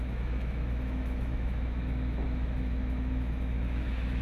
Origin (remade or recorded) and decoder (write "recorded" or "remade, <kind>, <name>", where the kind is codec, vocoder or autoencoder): remade, autoencoder, DAC-VAE